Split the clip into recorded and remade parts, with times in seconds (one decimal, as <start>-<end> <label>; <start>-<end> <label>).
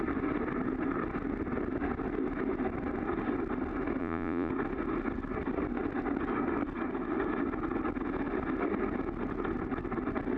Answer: 0.0-4.0 recorded; 4.0-4.5 remade; 4.5-10.4 recorded